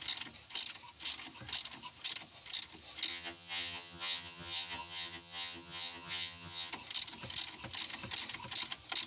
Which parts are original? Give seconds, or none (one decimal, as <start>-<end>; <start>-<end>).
0.0-3.1; 6.7-9.1

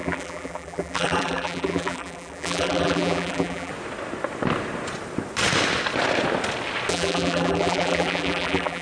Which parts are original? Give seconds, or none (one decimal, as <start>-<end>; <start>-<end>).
3.7-6.9

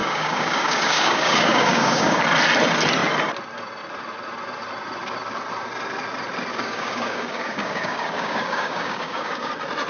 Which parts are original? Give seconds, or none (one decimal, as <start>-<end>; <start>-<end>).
2.2-6.5; 9.5-9.9